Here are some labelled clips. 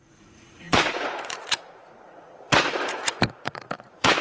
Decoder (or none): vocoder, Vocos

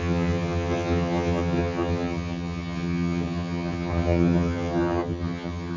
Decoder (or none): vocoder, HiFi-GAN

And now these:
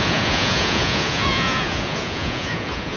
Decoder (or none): vocoder, Vocos